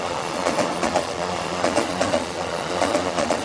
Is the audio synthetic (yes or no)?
yes